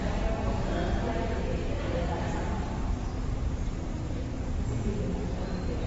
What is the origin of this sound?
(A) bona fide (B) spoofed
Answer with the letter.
B